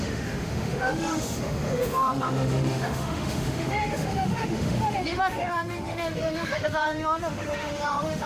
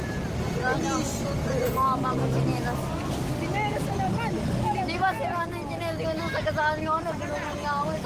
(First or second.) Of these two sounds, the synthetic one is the first